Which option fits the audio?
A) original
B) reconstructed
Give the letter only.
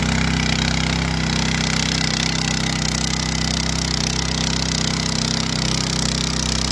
A